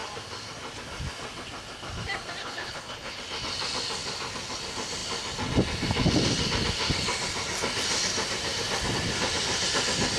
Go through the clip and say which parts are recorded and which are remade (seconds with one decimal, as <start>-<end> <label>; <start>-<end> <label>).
0.0-2.4 recorded; 2.4-3.2 remade; 3.2-10.2 recorded